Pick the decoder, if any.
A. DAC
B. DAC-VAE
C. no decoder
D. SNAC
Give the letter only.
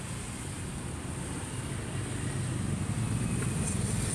C